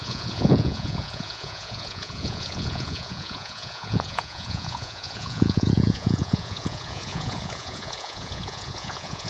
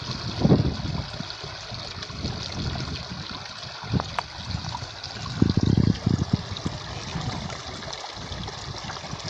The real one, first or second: second